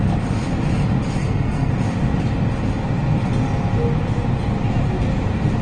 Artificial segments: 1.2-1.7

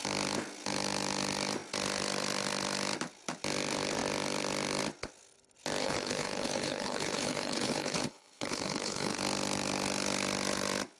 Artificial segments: 5.8-9.2

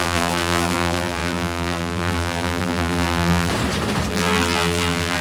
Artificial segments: 0.0-3.5; 4.1-5.2

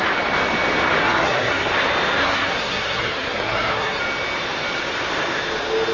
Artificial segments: 1.0-1.7; 2.2-4.0

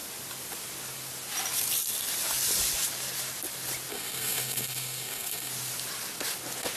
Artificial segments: 3.9-5.5